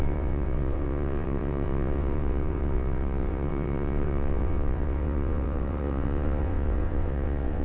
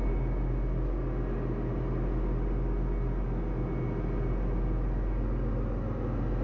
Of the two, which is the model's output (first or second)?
first